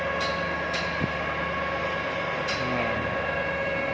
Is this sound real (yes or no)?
yes